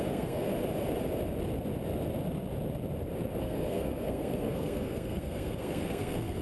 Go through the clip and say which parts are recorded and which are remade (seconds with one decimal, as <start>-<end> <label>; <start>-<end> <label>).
0.0-0.5 remade; 0.5-3.4 recorded; 3.4-6.4 remade